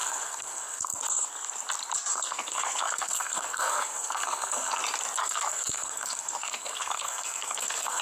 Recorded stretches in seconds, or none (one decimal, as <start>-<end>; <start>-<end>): 1.0-2.1; 4.8-5.2

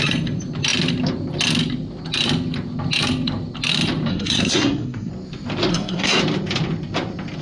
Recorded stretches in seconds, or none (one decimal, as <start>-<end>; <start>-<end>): 0.0-4.1; 5.1-5.7; 6.2-7.4